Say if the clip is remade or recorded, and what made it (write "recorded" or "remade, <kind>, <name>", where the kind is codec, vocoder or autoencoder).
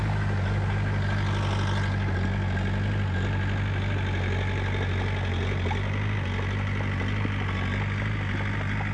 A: recorded